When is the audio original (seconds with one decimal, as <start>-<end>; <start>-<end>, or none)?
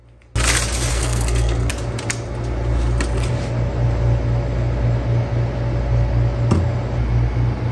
0.0-0.9; 1.7-7.7